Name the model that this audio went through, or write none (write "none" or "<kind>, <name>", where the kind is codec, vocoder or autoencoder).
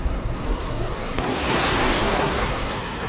codec, SNAC